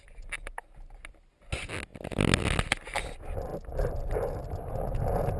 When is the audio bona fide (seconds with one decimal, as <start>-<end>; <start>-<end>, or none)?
0.0-5.4